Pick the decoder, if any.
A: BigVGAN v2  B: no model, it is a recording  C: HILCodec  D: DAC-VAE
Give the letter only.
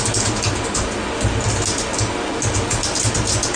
B